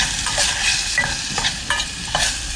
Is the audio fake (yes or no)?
no